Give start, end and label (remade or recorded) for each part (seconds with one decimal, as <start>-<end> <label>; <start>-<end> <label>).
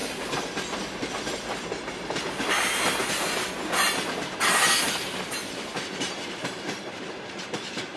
0.0-4.8 recorded; 4.8-8.0 remade